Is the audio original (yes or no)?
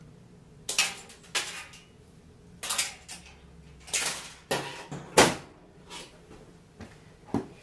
yes